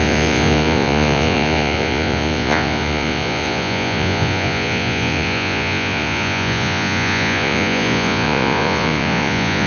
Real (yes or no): no